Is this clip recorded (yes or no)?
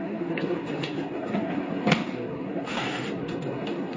no